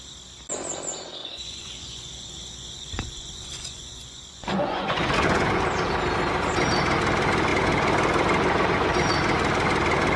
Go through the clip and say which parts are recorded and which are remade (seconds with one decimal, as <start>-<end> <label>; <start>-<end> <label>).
0.0-1.2 recorded; 1.2-5.6 remade; 5.6-10.2 recorded